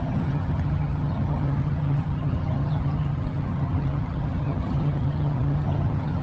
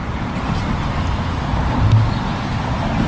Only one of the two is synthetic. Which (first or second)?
first